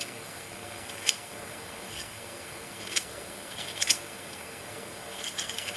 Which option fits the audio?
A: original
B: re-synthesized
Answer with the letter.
B